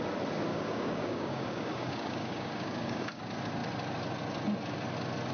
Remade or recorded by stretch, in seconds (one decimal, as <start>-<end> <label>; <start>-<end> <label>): 0.0-0.5 recorded; 0.5-3.2 remade; 3.2-5.3 recorded